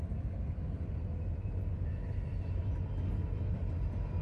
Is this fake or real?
real